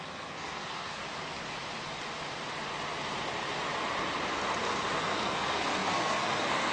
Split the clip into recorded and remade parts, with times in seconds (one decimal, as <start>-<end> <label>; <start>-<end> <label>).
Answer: 0.0-1.0 remade; 1.0-5.0 recorded; 5.0-6.7 remade